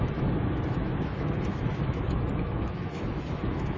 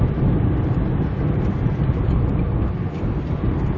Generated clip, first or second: first